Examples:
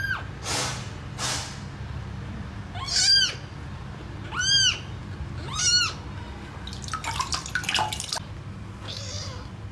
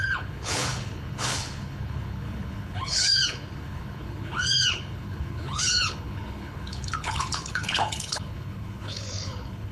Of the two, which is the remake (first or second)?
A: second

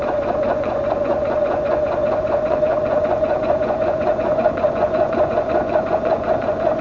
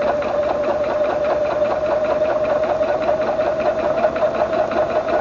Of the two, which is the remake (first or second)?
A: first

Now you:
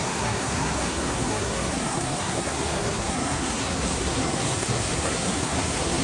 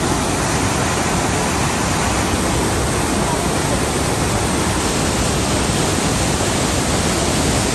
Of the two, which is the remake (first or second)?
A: first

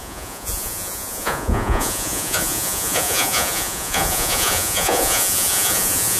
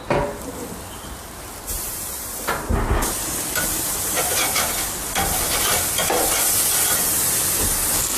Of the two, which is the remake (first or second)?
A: first